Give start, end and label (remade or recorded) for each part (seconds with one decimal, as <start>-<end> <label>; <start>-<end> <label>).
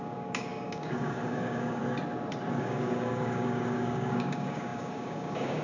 0.0-1.8 remade; 1.8-2.6 recorded; 2.6-5.6 remade